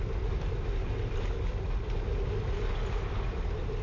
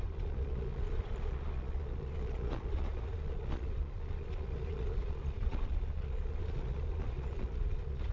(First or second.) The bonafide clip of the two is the first